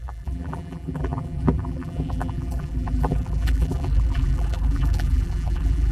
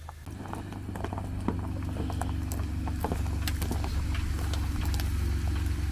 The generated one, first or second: first